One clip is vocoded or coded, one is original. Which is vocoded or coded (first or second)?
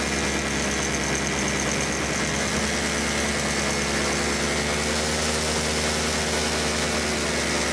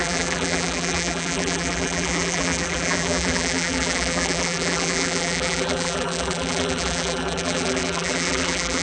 second